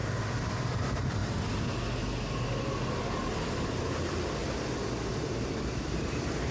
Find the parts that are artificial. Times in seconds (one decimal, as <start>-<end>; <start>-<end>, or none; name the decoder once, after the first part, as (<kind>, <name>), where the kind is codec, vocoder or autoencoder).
0.5-1.2 (vocoder, BigVGAN v2); 5.1-6.5